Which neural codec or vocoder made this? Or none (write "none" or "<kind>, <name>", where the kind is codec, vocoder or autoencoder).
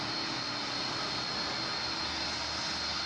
none